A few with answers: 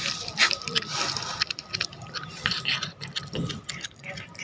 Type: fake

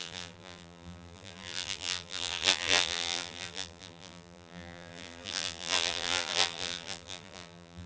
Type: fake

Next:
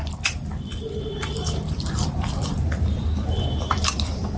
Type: fake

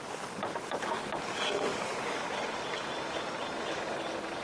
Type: real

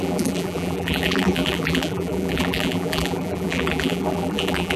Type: fake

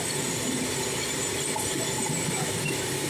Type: fake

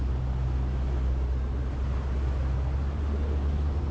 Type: real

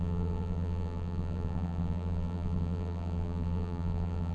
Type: fake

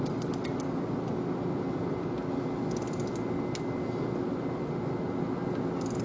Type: real